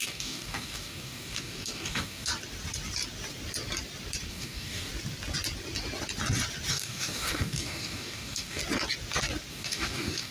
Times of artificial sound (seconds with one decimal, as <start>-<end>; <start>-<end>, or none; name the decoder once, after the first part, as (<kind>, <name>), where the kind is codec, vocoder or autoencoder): 0.0-2.3 (codec, DAC); 4.3-4.9; 6.7-8.6; 9.5-10.3